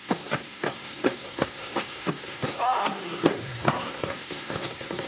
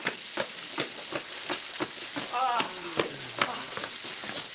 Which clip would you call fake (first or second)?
first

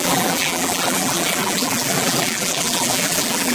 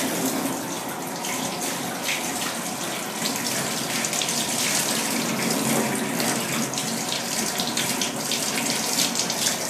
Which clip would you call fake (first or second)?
first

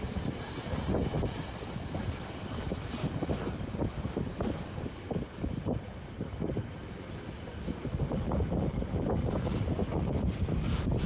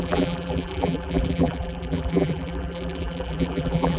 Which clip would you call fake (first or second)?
second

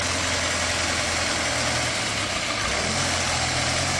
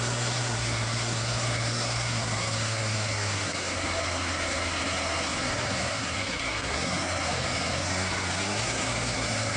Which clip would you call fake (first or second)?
second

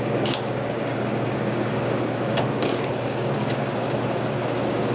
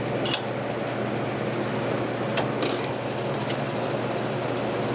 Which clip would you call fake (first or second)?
first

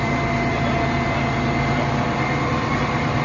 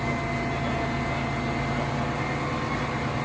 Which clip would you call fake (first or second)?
first